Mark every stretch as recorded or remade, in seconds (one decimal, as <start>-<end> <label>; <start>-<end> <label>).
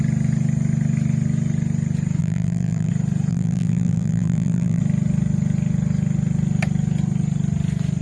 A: 0.0-2.2 recorded; 2.2-2.9 remade; 2.9-3.3 recorded; 3.3-4.8 remade; 4.8-8.0 recorded